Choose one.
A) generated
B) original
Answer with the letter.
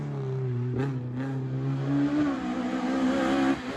B